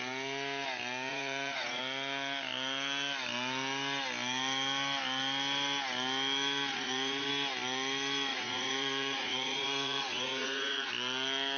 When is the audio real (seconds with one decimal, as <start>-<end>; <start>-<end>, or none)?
0.0-1.1; 1.8-6.7; 7.3-8.3; 10.9-11.6